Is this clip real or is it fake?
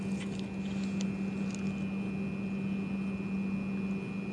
real